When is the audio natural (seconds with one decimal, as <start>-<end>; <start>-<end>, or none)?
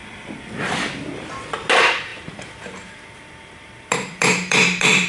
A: 0.0-1.7